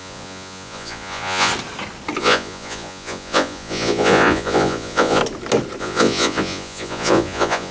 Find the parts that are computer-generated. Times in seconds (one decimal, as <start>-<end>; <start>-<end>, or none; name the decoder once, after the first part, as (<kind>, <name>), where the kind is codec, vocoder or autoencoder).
0.0-1.5 (vocoder, Vocos); 2.2-5.2; 5.8-7.7